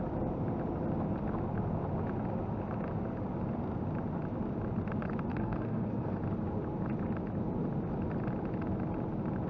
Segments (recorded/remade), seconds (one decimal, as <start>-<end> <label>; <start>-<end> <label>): 0.0-5.3 recorded; 5.3-6.2 remade; 6.2-9.5 recorded